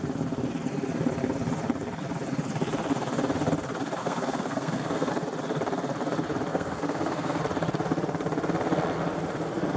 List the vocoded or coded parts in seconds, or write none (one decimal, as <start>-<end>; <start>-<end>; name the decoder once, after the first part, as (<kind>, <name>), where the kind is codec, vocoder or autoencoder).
4.0-5.1 (codec, SNAC); 6.5-7.4